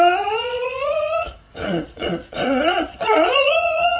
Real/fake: fake